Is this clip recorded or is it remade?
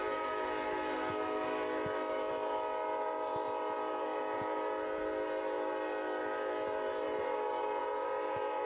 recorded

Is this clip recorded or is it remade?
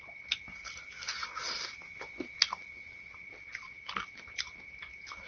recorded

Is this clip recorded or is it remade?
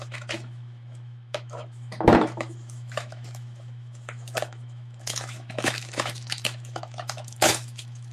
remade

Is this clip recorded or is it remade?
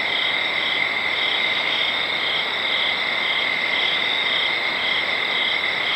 recorded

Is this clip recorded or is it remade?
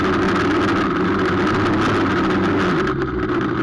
recorded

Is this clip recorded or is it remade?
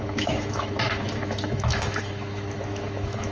remade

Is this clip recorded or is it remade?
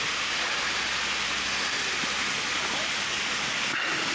recorded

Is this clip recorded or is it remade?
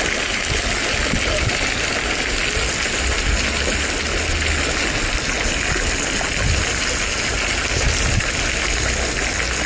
recorded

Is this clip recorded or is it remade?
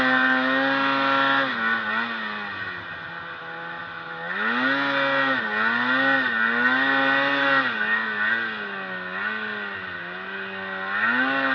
recorded